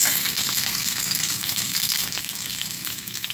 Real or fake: fake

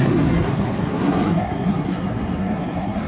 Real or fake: fake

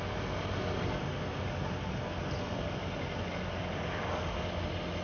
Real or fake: real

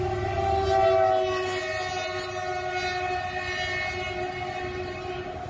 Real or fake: real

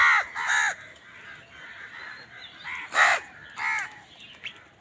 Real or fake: real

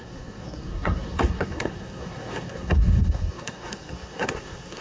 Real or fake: fake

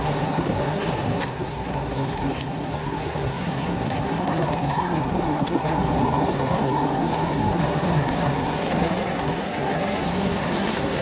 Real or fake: fake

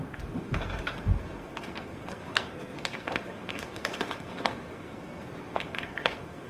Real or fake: fake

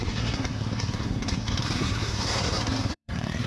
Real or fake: fake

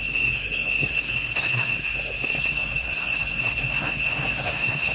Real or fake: fake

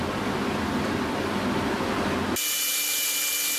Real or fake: real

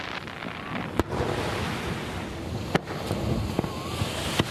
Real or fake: real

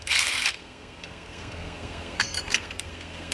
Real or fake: fake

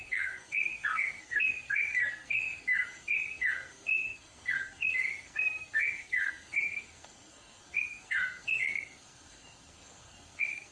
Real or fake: fake